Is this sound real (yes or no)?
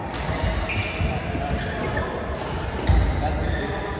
yes